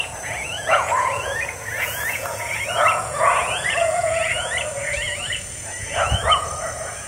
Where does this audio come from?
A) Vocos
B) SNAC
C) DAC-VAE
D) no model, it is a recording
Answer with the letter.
A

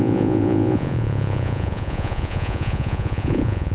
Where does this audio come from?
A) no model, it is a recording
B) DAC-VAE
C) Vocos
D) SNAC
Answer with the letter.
C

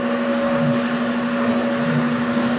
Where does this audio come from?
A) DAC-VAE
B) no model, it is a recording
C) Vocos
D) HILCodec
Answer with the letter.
B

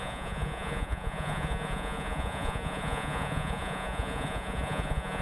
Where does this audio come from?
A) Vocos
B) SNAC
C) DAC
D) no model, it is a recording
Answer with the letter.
A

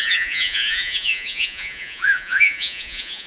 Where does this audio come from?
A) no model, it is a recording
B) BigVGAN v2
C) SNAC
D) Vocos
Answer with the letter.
D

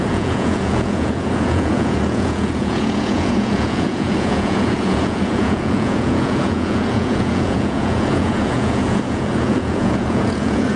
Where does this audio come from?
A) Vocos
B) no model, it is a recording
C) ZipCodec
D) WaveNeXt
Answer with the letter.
A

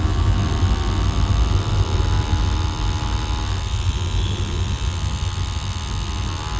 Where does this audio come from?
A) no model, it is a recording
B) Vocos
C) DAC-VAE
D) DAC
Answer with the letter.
A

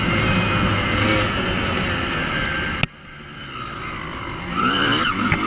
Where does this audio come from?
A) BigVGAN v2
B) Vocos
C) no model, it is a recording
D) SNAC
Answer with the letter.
C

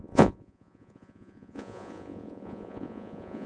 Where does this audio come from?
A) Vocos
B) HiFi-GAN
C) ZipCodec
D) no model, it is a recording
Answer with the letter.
A